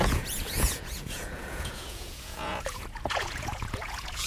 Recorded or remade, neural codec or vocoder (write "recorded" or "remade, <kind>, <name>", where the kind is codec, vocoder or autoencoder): remade, vocoder, Vocos